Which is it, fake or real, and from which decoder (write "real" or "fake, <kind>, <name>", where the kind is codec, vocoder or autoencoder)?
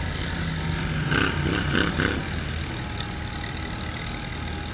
real